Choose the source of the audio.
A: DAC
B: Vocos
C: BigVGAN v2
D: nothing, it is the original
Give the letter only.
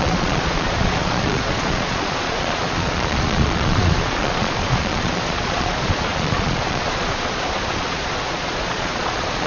B